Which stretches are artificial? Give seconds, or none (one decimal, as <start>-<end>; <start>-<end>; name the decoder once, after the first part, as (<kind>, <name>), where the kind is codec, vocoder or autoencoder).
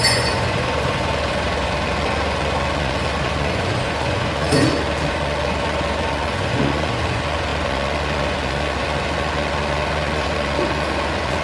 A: 0.0-11.4 (vocoder, Vocos)